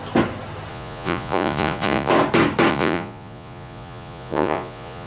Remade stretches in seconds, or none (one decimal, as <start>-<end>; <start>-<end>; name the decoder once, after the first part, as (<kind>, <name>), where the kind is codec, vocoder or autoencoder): 0.7-2.1 (vocoder, Vocos); 2.7-5.1